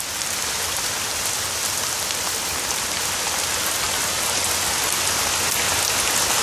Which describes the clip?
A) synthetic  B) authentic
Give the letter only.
B